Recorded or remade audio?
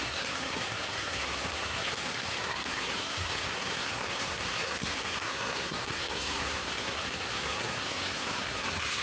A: remade